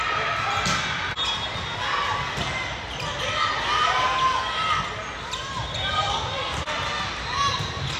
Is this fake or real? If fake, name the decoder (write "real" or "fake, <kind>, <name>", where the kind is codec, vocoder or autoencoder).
real